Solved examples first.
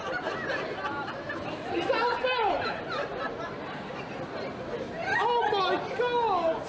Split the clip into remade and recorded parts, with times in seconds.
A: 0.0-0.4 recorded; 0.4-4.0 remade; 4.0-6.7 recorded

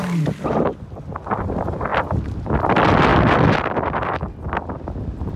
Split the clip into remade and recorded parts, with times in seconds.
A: 0.0-3.1 remade; 3.1-4.6 recorded; 4.6-5.4 remade

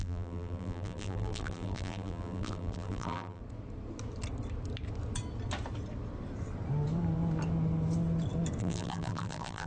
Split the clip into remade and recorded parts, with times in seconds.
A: 0.0-3.4 remade; 3.4-8.6 recorded; 8.6-9.7 remade

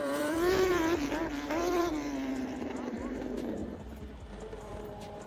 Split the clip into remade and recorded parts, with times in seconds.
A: 0.0-0.7 remade; 0.7-1.8 recorded; 1.8-3.6 remade; 3.6-5.3 recorded

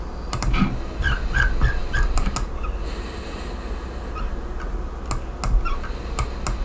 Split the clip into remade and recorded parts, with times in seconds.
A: 0.0-6.6 recorded

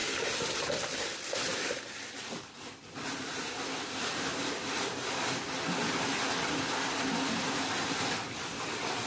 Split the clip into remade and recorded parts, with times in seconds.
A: 0.0-2.9 remade; 2.9-4.3 recorded; 4.3-5.9 remade; 5.9-9.1 recorded

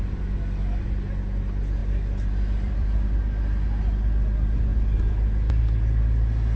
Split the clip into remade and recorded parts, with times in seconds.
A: 0.0-1.8 recorded; 1.8-3.2 remade; 3.2-6.6 recorded

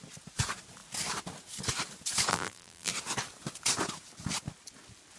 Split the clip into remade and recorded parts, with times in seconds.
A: 0.0-2.3 recorded; 2.3-2.9 remade; 2.9-5.2 recorded